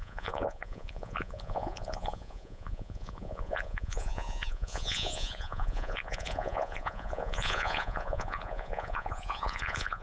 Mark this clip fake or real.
fake